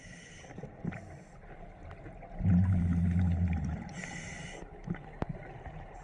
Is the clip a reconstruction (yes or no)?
no